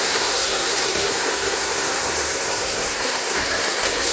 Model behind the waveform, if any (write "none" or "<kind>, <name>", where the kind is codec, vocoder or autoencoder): codec, SNAC